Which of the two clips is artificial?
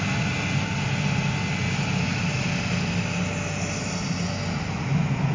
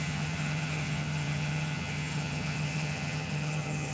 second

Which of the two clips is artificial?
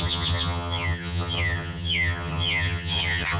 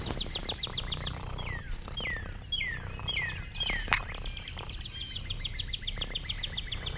first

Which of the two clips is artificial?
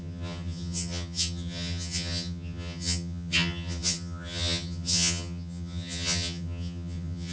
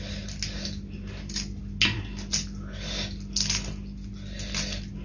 first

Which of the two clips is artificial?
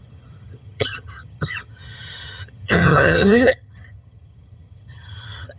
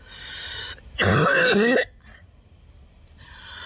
first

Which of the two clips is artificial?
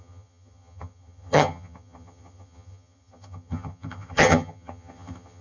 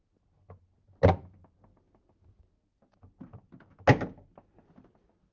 first